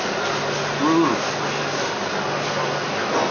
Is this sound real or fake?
real